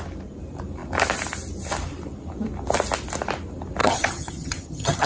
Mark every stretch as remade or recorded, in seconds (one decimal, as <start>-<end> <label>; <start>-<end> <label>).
0.0-3.8 recorded; 3.8-5.1 remade